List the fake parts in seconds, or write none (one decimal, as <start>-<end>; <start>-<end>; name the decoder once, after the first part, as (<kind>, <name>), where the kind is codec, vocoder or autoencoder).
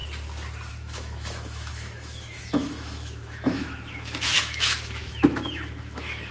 0.7-6.3 (autoencoder, DAC-VAE)